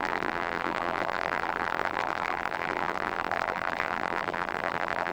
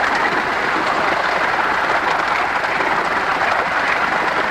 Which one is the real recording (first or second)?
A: second